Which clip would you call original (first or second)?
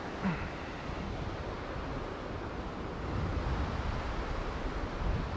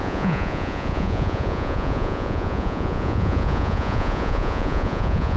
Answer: first